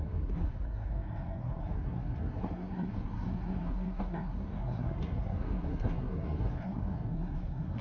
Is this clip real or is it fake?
fake